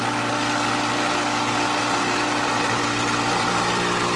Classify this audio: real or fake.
real